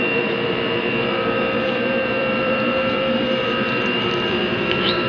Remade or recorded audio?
remade